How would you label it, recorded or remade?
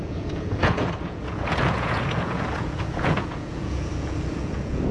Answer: remade